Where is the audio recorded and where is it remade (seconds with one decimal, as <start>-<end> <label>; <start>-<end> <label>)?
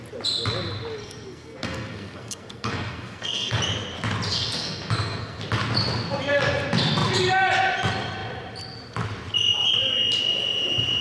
0.0-1.0 recorded; 1.0-3.6 remade; 3.6-4.3 recorded; 4.3-5.4 remade; 5.4-11.0 recorded